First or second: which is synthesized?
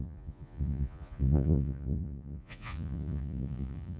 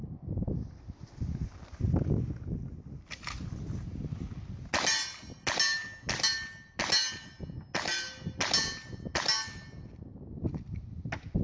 first